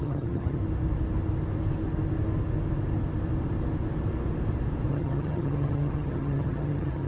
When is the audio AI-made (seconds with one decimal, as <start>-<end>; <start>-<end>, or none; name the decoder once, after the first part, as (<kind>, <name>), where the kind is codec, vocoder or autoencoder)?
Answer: 0.0-0.6 (vocoder, HiFi-GAN); 4.9-7.1